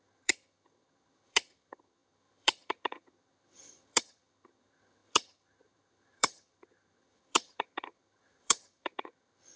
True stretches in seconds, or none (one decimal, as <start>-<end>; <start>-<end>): none